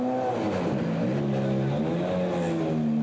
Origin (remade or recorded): recorded